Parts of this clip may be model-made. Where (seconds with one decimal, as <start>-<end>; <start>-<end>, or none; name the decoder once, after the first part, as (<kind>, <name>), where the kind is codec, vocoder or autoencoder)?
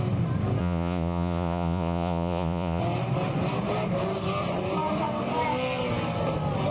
0.6-2.8 (vocoder, Vocos)